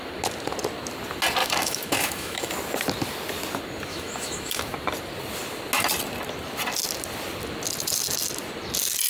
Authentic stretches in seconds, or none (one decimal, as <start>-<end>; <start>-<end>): 0.0-1.4; 2.5-3.9; 4.6-9.1